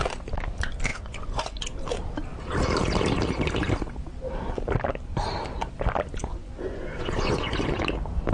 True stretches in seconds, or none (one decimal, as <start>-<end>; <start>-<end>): 0.0-0.9; 1.6-6.2; 7.8-8.3